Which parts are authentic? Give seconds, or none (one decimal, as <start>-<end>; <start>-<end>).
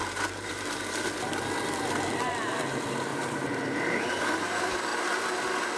1.1-3.1; 4.0-5.8